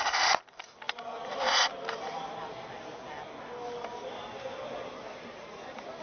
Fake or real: real